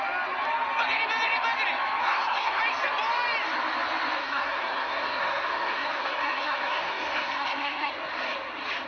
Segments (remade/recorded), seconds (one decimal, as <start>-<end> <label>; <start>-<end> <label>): 0.0-2.0 recorded; 2.0-2.6 remade; 2.6-4.2 recorded; 4.2-7.9 remade; 7.9-8.9 recorded